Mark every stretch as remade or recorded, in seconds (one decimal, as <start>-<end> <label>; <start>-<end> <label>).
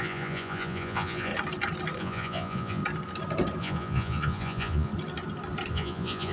0.0-1.3 remade; 1.3-2.0 recorded; 2.0-2.8 remade; 2.8-3.6 recorded; 3.6-4.9 remade; 4.9-5.7 recorded; 5.7-6.3 remade